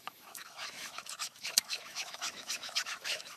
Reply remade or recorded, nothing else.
remade